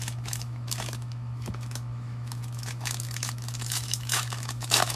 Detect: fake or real fake